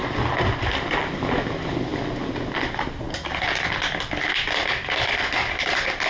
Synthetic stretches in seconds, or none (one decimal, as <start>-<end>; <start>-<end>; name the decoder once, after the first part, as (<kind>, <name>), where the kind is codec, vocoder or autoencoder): none